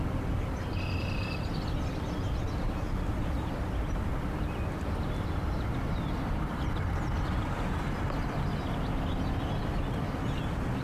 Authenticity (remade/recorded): recorded